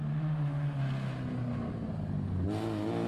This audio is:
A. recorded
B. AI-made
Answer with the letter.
A